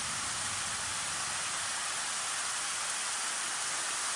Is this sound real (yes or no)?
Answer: yes